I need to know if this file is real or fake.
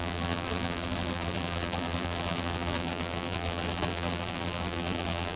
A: fake